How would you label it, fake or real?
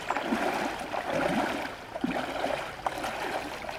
real